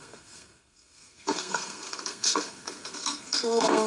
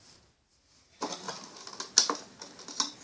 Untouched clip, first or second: second